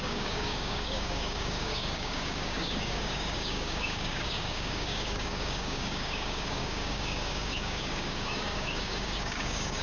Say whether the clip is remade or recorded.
remade